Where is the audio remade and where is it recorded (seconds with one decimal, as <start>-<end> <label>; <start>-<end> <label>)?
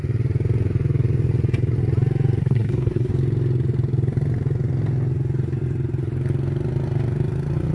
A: 0.0-2.4 recorded; 2.4-3.1 remade; 3.1-7.7 recorded